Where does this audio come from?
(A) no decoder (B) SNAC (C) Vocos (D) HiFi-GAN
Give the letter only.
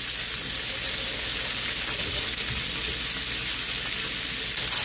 A